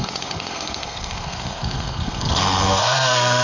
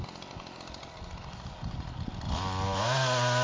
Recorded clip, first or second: second